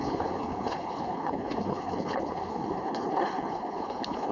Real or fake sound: fake